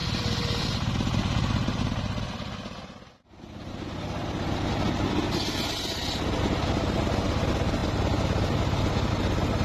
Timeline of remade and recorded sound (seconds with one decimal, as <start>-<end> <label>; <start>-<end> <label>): 0.0-9.6 recorded

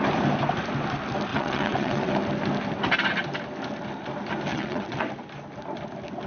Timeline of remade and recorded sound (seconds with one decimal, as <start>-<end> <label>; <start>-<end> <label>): 0.0-1.3 recorded; 1.3-2.1 remade; 2.1-4.5 recorded; 4.5-5.1 remade; 5.1-6.3 recorded

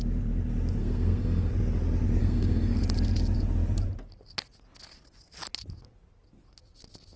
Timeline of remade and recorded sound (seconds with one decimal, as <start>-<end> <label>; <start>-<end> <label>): 0.0-0.8 recorded; 0.8-1.5 remade; 1.5-2.2 recorded; 2.2-2.8 remade; 2.8-7.2 recorded

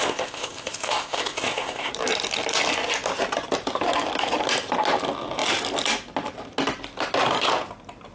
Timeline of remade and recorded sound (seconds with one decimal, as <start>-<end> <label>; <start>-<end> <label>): 0.0-1.9 remade; 1.9-8.1 recorded

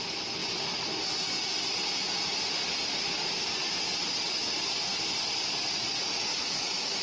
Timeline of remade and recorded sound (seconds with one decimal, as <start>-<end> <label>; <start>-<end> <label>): 0.0-6.3 recorded; 6.3-7.0 remade

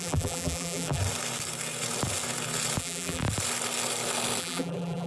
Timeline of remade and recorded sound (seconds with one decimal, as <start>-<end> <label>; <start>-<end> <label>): 0.0-1.0 remade; 1.0-2.8 recorded; 2.8-3.2 remade; 3.2-4.4 recorded; 4.4-5.1 remade